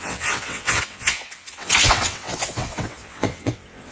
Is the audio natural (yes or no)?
no